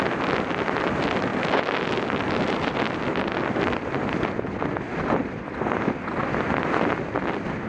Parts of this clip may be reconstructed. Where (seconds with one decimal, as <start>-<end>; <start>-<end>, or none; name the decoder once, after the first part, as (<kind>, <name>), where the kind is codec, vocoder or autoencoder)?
none